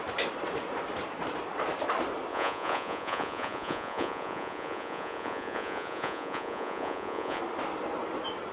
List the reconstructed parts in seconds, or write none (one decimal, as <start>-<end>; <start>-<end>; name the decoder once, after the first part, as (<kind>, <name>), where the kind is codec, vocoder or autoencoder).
2.3-7.4 (vocoder, Vocos)